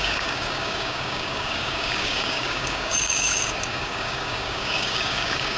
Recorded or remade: remade